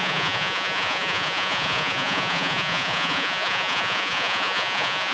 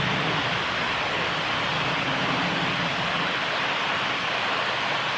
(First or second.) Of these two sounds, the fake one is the first